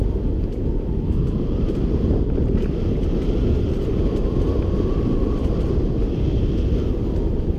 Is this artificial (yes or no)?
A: no